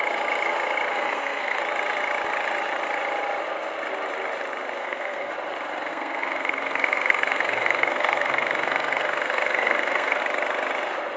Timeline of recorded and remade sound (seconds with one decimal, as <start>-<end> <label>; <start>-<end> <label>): 0.0-0.9 recorded; 0.9-1.6 remade; 1.6-4.8 recorded; 4.8-5.3 remade; 5.3-5.9 recorded; 5.9-10.2 remade; 10.2-11.2 recorded